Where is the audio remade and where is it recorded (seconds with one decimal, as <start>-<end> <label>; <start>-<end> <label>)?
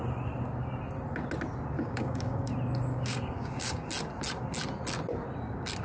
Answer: 0.0-1.8 recorded; 1.8-2.5 remade; 2.5-2.9 recorded; 2.9-3.9 remade; 3.9-5.8 recorded